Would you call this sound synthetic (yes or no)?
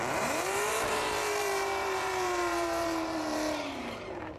yes